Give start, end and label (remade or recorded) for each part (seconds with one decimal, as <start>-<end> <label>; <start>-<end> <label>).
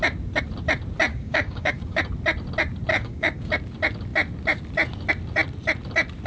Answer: 0.0-1.1 recorded; 1.1-2.0 remade; 2.0-2.9 recorded; 2.9-3.5 remade; 3.5-6.3 recorded